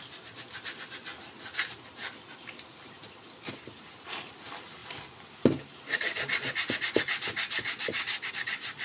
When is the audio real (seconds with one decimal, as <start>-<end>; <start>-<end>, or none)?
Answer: 0.0-8.8